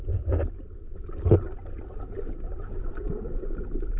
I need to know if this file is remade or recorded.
recorded